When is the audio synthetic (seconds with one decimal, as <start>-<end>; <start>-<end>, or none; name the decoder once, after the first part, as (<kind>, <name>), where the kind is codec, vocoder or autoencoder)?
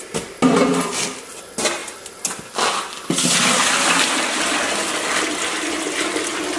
none